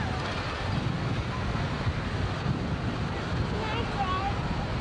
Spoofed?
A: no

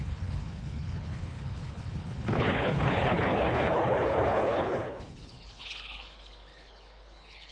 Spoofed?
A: yes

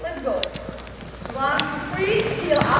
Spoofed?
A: no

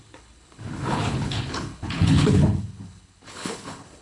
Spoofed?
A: yes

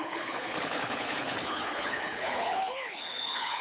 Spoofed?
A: yes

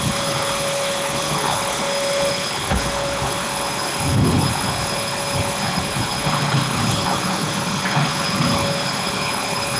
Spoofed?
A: yes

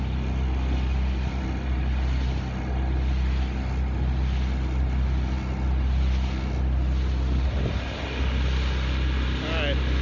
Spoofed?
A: no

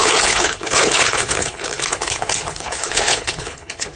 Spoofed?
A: yes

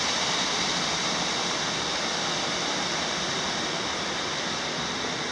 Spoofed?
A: no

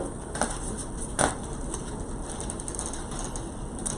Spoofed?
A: no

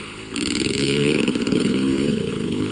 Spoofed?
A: yes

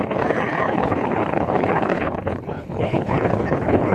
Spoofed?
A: yes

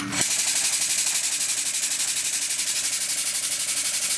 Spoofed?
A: no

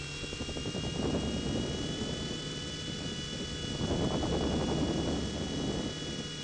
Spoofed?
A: no